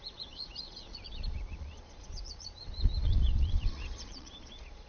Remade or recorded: remade